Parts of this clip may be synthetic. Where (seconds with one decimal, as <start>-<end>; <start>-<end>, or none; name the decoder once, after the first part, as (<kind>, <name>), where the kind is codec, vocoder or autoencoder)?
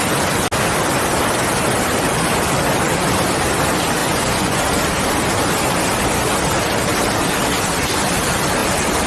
4.0-4.6 (vocoder, Vocos)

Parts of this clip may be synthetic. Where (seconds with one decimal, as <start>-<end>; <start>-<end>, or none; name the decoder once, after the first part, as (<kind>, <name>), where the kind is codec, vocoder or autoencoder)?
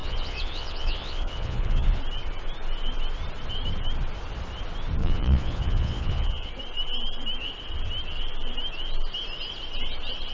0.0-2.0 (vocoder, Vocos); 5.0-6.5